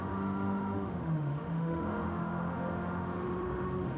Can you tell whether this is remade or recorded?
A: remade